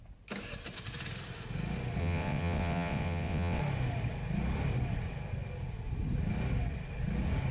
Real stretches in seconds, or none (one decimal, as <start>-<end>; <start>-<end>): 0.0-2.0; 3.6-7.5